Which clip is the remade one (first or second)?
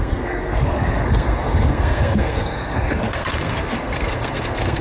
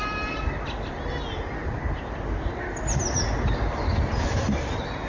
first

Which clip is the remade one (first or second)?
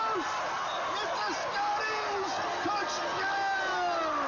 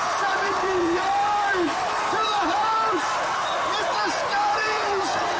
second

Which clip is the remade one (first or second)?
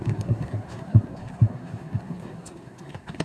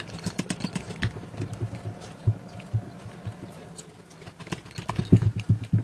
first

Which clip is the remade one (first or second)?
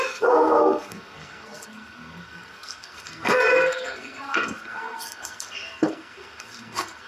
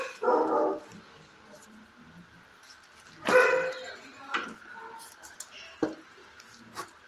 first